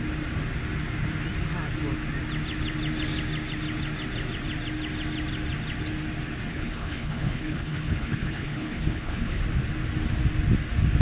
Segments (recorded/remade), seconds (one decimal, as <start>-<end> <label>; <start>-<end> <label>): 0.0-6.5 recorded; 6.5-9.4 remade; 9.4-11.0 recorded